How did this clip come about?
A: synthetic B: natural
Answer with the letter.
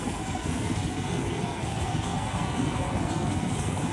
A